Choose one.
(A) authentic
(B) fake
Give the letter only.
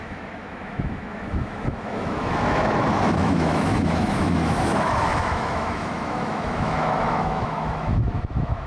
B